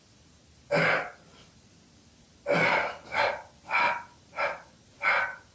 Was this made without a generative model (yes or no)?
yes